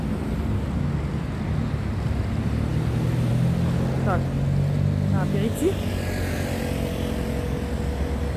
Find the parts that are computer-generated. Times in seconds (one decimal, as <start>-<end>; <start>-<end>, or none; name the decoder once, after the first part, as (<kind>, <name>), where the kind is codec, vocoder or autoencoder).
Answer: none